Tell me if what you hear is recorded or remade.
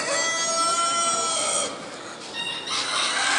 recorded